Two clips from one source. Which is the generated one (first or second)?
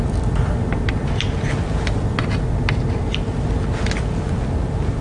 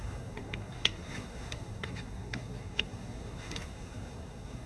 second